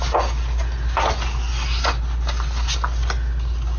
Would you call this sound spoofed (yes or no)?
no